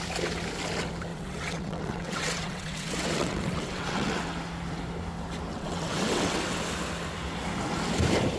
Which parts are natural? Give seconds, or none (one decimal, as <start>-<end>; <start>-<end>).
0.0-1.1; 4.2-5.5; 6.4-8.4